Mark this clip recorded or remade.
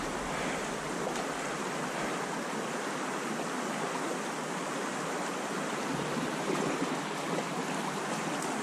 recorded